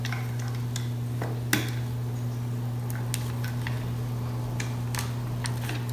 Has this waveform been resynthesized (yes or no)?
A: no